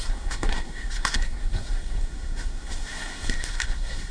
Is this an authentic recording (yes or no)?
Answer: no